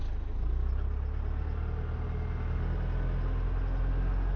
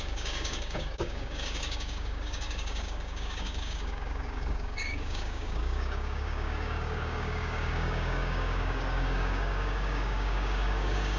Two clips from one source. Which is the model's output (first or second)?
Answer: second